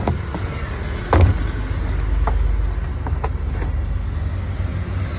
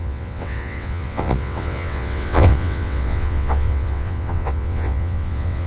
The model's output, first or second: second